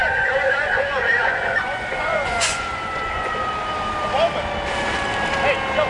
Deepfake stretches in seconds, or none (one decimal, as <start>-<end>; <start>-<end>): 0.0-3.5

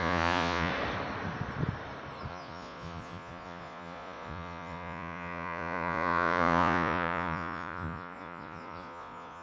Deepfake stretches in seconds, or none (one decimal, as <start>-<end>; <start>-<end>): 0.0-0.7; 2.3-9.4